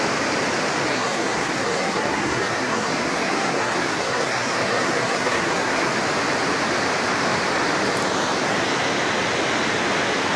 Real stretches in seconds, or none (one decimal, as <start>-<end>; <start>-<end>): 0.0-0.9; 5.9-10.4